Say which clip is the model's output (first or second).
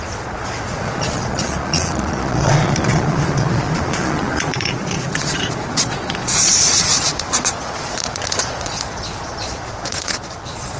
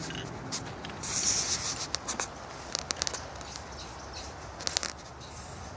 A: first